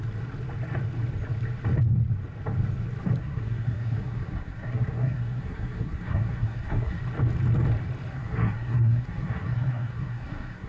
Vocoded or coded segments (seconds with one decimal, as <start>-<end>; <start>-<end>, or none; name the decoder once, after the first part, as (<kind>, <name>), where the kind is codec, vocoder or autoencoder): 3.2-7.0 (codec, SNAC); 8.1-10.7